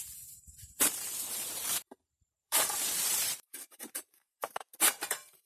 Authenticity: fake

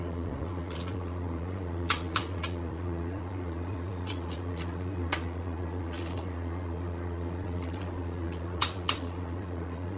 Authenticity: fake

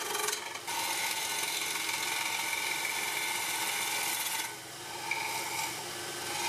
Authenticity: real